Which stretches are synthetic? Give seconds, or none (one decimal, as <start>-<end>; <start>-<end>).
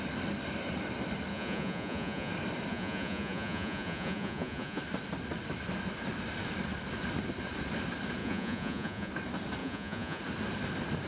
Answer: 1.3-2.3; 2.7-4.8; 8.2-9.1; 9.6-10.2